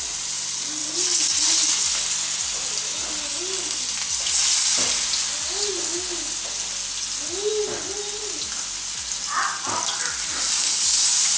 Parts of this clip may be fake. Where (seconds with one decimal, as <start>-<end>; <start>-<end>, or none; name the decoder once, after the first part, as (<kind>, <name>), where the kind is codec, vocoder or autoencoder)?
none